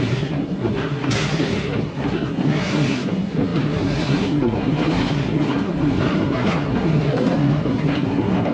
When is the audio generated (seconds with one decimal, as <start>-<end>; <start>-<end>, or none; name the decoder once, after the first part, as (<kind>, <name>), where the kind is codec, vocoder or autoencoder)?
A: 0.0-8.5 (codec, SNAC)